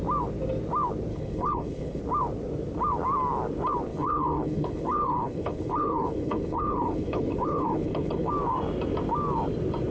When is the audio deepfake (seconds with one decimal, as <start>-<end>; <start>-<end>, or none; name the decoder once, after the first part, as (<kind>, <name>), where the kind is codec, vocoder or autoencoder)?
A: 1.1-2.0 (codec, HILCodec); 3.9-8.3